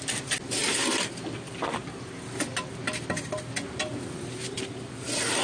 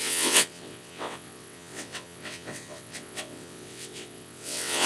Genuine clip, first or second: first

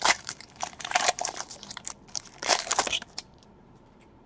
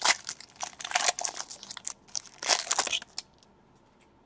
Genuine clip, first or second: second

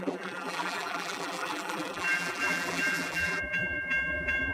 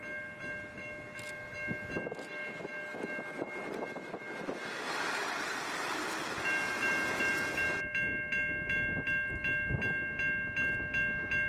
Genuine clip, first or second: second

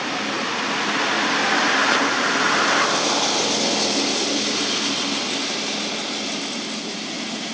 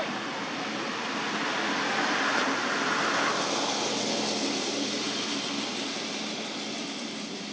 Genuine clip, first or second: first